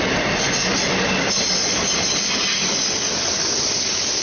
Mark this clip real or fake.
real